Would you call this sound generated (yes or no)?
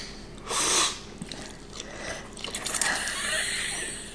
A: no